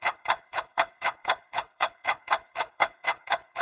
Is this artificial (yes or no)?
yes